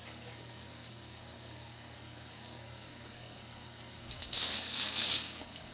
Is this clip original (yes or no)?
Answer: no